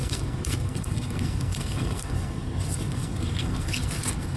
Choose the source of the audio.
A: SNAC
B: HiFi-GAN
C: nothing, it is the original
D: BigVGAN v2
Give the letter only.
A